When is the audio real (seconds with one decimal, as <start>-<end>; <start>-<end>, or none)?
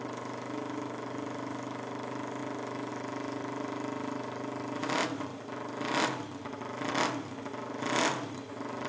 0.0-8.9